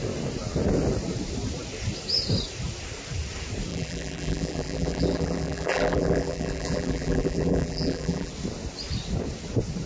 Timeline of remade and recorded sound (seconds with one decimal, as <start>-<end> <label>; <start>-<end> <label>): 0.0-3.7 recorded; 3.7-8.3 remade; 8.3-9.9 recorded